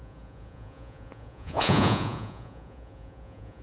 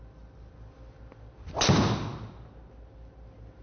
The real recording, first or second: second